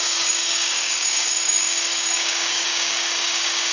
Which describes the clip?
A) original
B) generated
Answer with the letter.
B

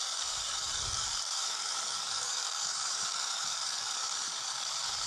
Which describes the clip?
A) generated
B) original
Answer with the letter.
A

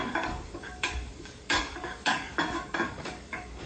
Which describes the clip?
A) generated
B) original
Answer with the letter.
A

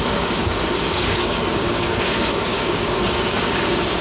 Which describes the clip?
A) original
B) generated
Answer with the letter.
B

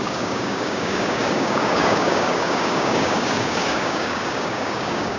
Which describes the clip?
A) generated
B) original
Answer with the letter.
A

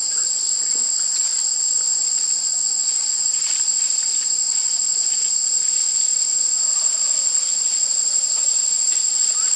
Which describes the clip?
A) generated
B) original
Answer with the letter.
B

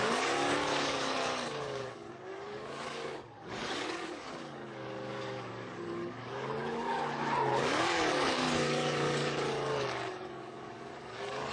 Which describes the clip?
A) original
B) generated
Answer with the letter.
B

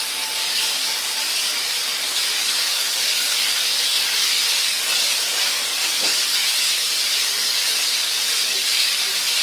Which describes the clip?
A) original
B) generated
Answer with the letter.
B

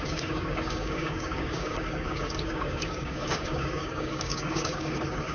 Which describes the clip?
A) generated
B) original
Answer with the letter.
A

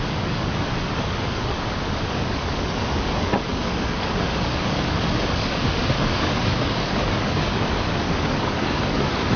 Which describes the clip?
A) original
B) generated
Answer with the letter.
B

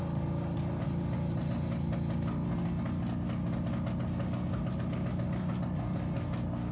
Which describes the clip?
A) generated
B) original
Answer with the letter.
B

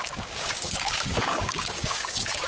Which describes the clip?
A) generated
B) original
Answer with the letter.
A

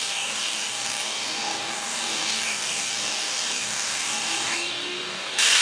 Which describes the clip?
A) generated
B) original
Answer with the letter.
A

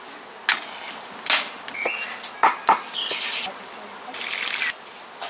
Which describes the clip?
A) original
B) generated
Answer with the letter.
A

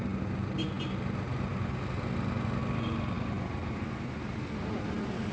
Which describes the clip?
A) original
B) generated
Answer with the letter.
A